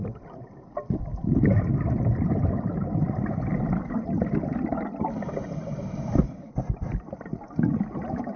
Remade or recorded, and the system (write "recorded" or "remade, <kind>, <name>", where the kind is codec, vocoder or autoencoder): remade, vocoder, BigVGAN v2